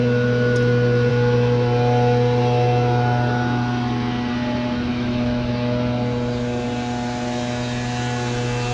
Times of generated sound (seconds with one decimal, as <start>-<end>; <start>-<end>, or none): 4.9-5.5